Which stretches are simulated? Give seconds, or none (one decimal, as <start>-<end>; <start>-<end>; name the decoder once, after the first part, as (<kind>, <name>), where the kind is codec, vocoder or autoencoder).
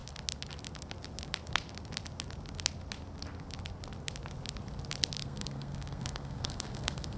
5.2-7.2 (codec, SNAC)